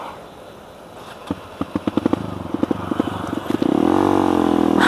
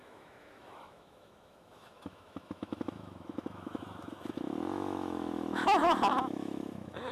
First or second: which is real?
first